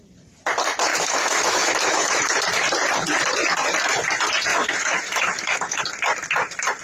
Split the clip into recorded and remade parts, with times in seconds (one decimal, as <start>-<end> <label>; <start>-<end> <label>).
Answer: 0.0-0.9 recorded; 0.9-2.2 remade; 2.2-4.5 recorded; 4.5-5.8 remade; 5.8-6.8 recorded